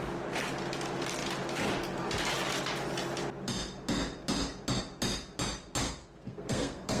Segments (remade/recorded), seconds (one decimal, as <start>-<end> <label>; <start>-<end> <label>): 0.0-5.8 recorded; 5.8-7.0 remade